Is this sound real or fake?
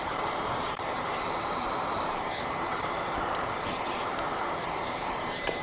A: fake